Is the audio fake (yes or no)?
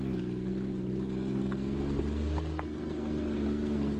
yes